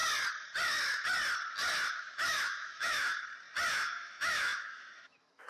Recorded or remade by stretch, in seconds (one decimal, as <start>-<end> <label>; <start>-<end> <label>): 0.0-1.9 recorded; 1.9-3.1 remade; 3.1-3.7 recorded; 3.7-5.5 remade